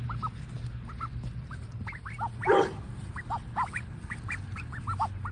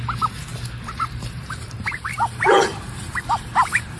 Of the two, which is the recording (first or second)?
first